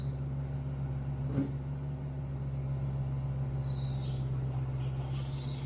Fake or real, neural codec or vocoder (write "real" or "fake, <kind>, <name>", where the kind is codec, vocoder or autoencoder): real